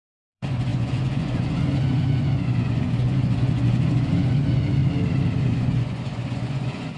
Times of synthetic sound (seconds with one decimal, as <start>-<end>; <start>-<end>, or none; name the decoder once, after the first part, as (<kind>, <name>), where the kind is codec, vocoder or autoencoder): 0.0-4.8 (vocoder, Vocos); 5.4-7.0